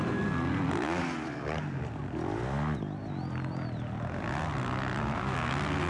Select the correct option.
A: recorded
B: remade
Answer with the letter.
A